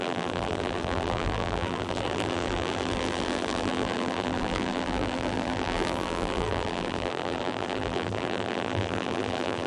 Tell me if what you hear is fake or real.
fake